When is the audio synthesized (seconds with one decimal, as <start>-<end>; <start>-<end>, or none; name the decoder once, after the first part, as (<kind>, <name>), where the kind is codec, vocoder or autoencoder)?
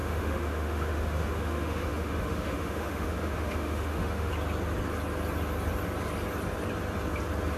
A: 0.0-4.3 (autoencoder, DAC-VAE)